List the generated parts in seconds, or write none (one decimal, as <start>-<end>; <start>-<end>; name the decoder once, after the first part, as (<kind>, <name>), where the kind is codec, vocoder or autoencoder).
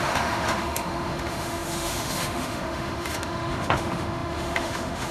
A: 0.0-5.1 (autoencoder, DAC-VAE)